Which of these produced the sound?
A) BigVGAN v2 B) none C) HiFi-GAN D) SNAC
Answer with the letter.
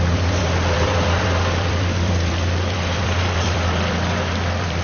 A